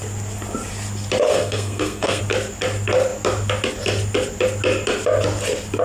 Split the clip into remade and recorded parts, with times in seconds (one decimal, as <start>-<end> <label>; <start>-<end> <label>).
0.0-1.3 recorded; 1.3-2.2 remade; 2.2-5.8 recorded